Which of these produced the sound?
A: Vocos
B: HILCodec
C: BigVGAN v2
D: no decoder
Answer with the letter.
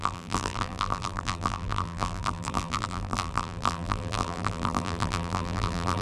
C